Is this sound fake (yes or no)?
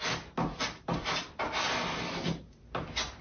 no